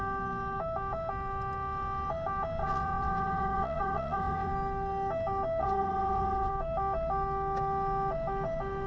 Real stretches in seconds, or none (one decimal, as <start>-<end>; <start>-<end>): 0.0-2.6; 4.5-5.6; 6.5-8.9